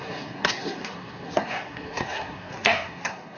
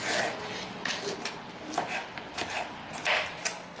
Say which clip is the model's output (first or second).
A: first